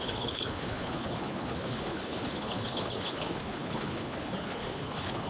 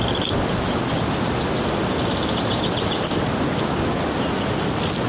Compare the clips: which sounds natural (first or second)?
second